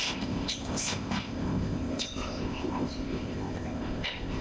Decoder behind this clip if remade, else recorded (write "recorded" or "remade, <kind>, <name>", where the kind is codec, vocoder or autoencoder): remade, codec, ZipCodec